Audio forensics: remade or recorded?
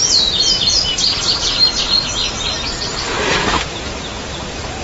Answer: recorded